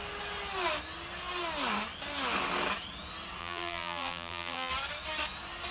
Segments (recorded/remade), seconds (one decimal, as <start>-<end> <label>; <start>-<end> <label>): 0.0-3.4 recorded; 3.4-4.7 remade; 4.7-5.7 recorded